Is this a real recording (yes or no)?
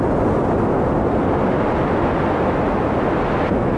yes